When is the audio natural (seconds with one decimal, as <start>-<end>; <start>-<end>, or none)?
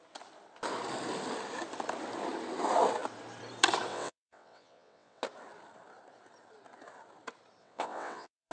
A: 0.0-3.9; 5.2-7.6